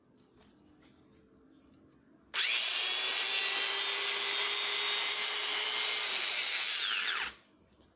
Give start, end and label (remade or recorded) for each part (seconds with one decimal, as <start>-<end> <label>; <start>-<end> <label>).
0.0-8.0 recorded